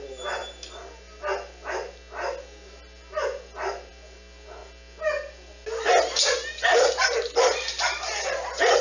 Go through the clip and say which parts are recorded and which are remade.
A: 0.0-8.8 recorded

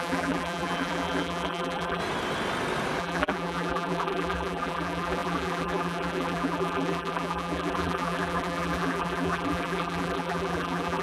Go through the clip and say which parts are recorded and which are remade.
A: 0.0-2.0 remade; 2.0-3.0 recorded; 3.0-11.0 remade

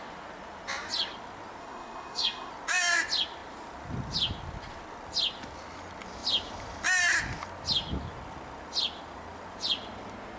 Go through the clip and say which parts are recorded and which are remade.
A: 0.0-1.6 recorded; 1.6-2.5 remade; 2.5-10.4 recorded

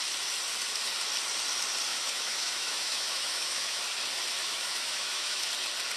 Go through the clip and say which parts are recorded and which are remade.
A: 0.0-1.9 recorded; 1.9-3.8 remade; 3.8-4.4 recorded; 4.4-5.5 remade; 5.5-6.0 recorded

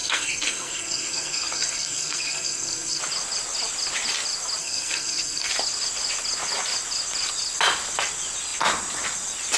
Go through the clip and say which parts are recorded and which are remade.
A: 0.0-3.0 remade; 3.0-4.6 recorded; 4.6-5.5 remade; 5.5-9.6 recorded

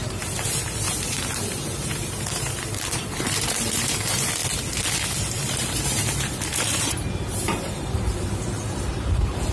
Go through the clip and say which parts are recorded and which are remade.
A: 0.0-4.4 remade; 4.4-5.2 recorded; 5.2-9.5 remade

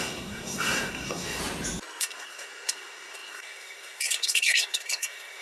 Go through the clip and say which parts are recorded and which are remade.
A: 0.0-1.4 remade; 1.4-2.0 recorded; 2.0-5.4 remade

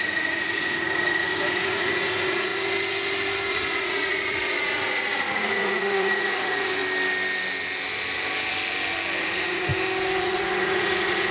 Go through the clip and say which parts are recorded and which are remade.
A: 0.0-2.5 remade; 2.5-3.5 recorded; 3.5-6.8 remade; 6.8-9.2 recorded; 9.2-9.7 remade; 9.7-10.2 recorded; 10.2-11.3 remade